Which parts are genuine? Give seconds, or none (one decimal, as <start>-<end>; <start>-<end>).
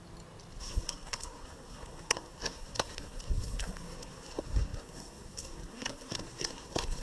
0.0-0.6